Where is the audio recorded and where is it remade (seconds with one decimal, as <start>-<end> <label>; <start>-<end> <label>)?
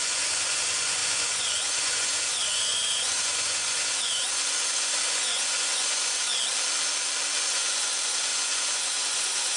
0.0-6.3 remade; 6.3-7.3 recorded; 7.3-9.6 remade